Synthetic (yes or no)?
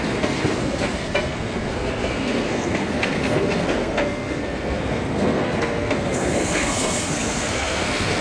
yes